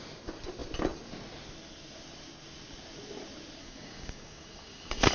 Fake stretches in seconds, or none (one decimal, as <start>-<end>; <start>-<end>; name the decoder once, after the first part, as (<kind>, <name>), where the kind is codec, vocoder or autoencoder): 3.6-5.1 (codec, DAC)